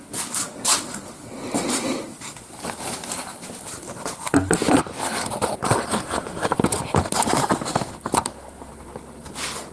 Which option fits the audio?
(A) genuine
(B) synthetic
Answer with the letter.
B